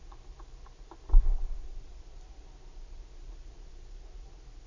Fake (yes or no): no